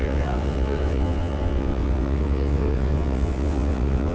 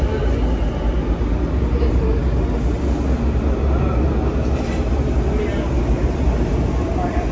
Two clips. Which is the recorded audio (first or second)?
second